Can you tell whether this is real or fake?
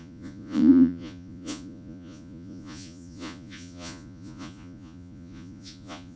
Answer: fake